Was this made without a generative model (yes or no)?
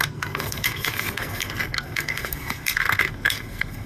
no